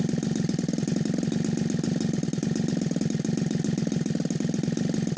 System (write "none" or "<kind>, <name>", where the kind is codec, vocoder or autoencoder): none